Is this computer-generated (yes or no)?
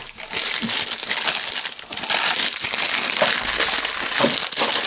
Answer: no